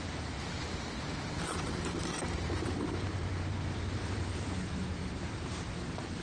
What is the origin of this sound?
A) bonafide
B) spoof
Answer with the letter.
B